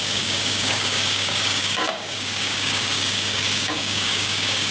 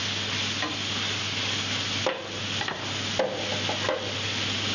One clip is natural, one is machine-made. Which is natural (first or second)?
second